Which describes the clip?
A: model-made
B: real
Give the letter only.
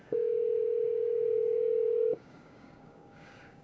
A